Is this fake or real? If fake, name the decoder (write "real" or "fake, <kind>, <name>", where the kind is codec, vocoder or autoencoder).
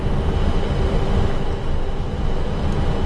real